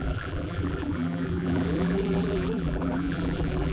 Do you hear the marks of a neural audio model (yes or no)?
yes